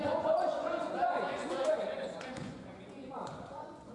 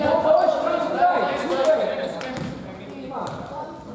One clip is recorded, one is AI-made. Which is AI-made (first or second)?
first